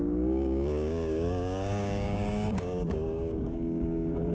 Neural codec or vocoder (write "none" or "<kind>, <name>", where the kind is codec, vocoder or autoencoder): codec, DAC